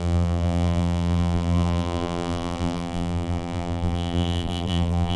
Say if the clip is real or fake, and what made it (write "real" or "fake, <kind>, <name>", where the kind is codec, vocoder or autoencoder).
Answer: fake, vocoder, BigVGAN v2